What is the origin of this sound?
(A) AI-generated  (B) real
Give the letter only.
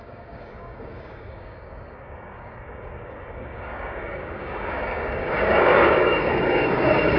A